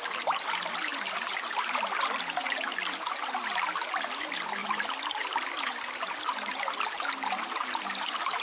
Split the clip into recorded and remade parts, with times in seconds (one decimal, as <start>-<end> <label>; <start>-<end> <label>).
0.0-8.4 recorded